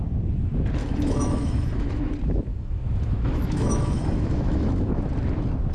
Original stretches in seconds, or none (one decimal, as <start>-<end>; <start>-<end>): 0.0-0.8; 2.1-2.5; 5.1-5.7